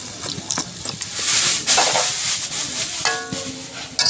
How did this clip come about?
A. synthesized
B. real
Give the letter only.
B